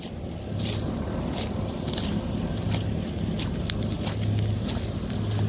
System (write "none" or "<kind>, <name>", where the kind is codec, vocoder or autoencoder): none